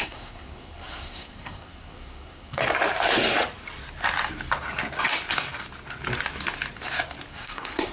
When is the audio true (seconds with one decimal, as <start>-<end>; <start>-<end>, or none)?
2.6-7.3